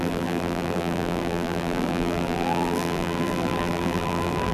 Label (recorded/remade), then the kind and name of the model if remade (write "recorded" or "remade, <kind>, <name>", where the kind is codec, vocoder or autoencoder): remade, vocoder, BigVGAN v2